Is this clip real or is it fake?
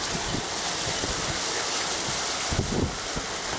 real